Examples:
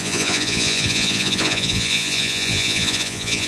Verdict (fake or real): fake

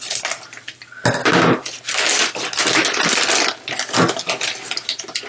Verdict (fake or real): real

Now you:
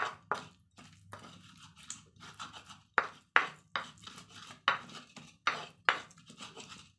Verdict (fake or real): real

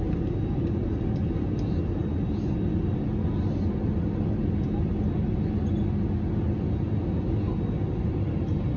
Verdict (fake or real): real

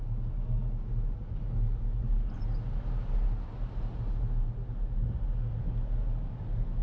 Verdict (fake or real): real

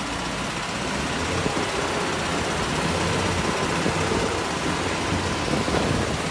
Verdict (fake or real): real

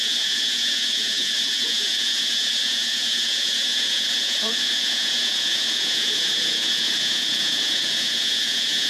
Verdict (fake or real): fake